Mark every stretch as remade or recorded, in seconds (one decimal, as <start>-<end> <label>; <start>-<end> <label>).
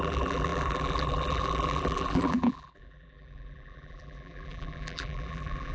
0.0-5.7 remade